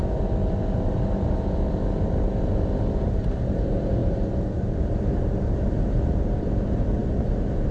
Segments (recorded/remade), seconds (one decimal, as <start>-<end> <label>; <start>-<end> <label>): 0.0-3.0 recorded; 3.0-7.7 remade